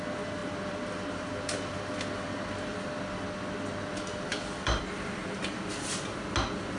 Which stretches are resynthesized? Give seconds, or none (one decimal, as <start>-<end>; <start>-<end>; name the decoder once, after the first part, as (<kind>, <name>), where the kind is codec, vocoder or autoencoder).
0.4-2.8 (vocoder, BigVGAN v2); 4.3-4.8; 5.2-5.7